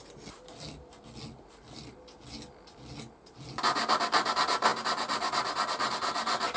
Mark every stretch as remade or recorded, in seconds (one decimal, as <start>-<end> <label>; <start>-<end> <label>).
0.0-6.6 recorded